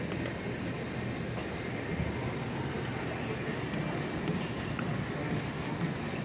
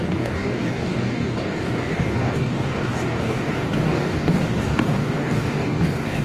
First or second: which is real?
first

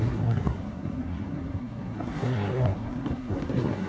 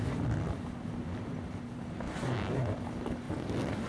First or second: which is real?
second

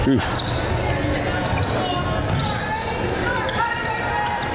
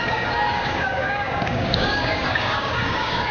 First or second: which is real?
first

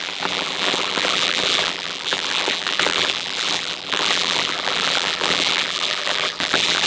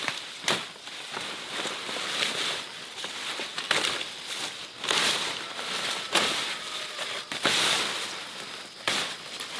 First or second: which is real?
second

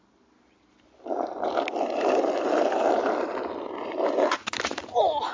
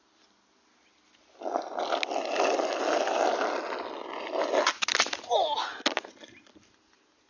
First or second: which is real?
second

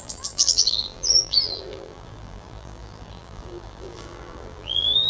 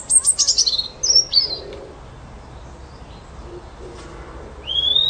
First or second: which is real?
second